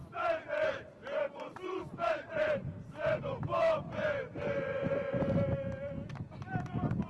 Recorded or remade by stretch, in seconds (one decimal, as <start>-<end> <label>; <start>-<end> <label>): 0.0-3.2 remade; 3.2-4.7 recorded; 4.7-5.3 remade; 5.3-7.1 recorded